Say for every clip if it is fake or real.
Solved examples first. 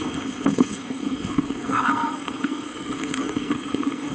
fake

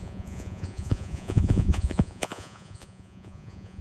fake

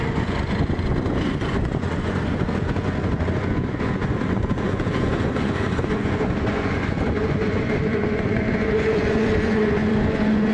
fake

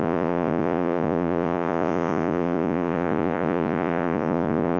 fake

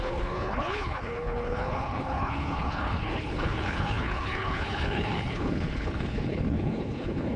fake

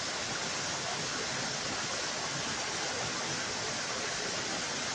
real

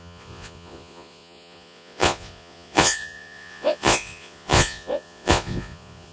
fake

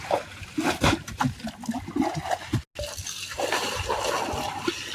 real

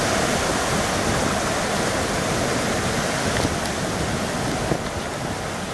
real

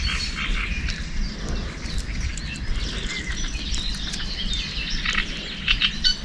real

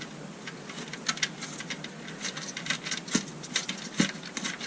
real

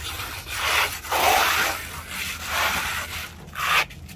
real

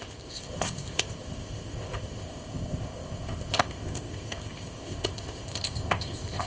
fake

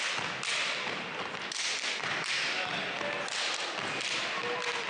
real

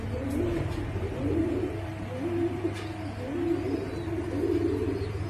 real